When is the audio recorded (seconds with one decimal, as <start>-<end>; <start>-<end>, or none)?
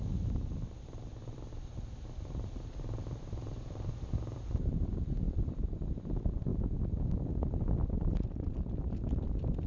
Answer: 0.0-0.7